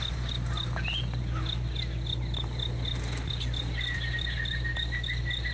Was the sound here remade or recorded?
recorded